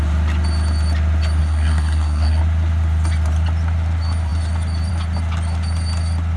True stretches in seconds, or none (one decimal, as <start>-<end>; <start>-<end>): 0.0-1.4; 2.4-6.4